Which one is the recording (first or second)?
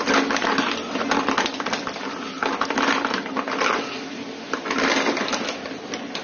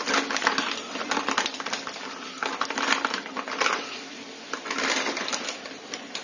first